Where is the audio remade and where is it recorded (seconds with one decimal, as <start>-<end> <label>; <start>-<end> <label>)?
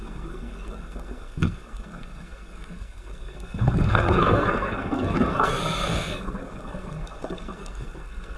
0.0-8.4 remade